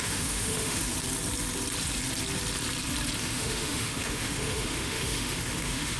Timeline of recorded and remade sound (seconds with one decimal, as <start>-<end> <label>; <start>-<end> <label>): 0.0-0.9 remade; 0.9-3.2 recorded; 3.2-6.0 remade

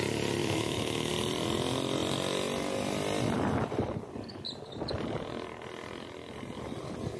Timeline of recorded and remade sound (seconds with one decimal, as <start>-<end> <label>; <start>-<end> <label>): 0.0-0.4 recorded; 0.4-1.1 remade; 1.1-7.2 recorded

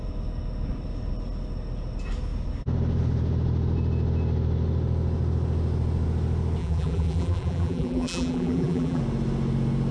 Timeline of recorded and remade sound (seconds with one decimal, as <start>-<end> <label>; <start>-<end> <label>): 0.0-6.6 recorded; 6.6-9.0 remade; 9.0-9.9 recorded

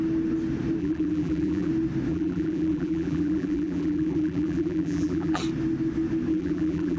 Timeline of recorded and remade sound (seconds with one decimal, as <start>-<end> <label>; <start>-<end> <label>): 0.0-0.8 recorded; 0.8-1.7 remade; 1.7-2.1 recorded; 2.1-5.4 remade; 5.4-6.3 recorded; 6.3-7.0 remade

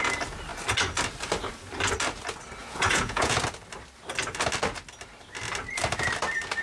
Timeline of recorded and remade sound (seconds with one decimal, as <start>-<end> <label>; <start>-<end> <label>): 0.0-2.6 recorded; 2.6-3.4 remade; 3.4-6.6 recorded

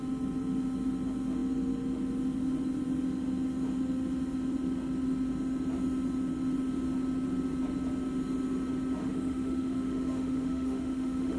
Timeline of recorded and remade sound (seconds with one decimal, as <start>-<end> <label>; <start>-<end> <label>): 0.0-9.0 recorded; 9.0-11.4 remade

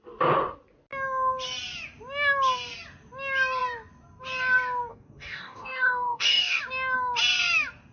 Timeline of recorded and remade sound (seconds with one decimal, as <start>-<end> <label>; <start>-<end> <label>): 0.0-4.9 recorded; 4.9-6.6 remade; 6.6-7.9 recorded